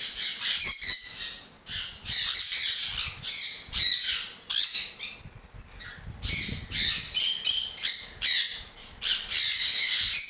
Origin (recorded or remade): recorded